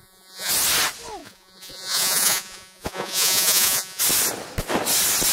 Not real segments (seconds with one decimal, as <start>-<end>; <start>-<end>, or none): 0.0-0.5; 1.2-4.0